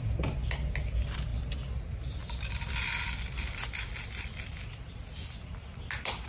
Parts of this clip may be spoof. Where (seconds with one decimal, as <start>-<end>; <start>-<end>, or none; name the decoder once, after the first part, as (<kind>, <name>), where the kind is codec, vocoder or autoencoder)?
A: none